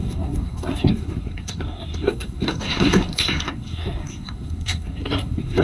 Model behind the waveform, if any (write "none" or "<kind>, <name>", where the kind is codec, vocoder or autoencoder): codec, SNAC